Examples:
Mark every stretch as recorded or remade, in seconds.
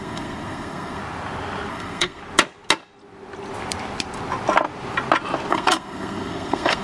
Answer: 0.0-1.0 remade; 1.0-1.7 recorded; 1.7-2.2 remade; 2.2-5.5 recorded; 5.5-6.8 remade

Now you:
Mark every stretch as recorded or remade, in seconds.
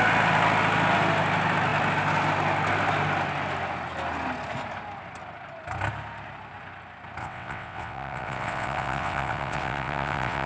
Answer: 0.0-7.2 recorded; 7.2-10.5 remade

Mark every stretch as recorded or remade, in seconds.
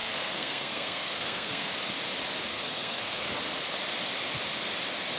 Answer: 0.0-1.7 remade; 1.7-2.5 recorded; 2.5-3.4 remade; 3.4-5.2 recorded